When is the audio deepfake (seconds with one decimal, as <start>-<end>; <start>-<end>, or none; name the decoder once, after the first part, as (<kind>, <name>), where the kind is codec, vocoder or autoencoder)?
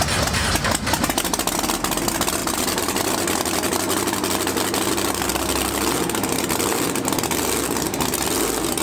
2.4-3.1 (vocoder, BigVGAN v2)